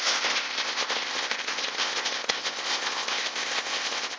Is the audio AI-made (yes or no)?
yes